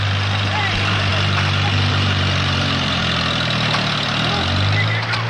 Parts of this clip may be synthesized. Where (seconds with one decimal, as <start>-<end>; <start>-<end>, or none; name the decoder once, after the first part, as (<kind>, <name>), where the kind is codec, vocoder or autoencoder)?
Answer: 0.0-1.1 (vocoder, BigVGAN v2); 1.9-3.0